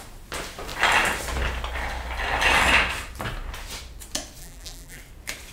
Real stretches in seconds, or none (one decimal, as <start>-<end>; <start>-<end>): 0.0-4.4; 5.0-5.5